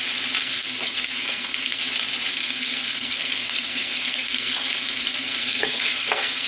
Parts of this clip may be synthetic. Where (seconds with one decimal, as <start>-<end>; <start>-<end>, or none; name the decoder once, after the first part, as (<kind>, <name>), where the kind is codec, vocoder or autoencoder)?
0.4-1.8 (codec, SNAC); 2.3-6.5